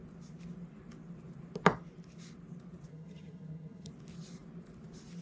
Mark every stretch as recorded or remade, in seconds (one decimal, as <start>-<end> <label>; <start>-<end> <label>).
0.0-2.9 recorded; 2.9-3.9 remade; 3.9-5.2 recorded